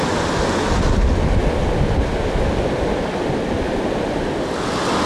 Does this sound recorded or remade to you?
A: recorded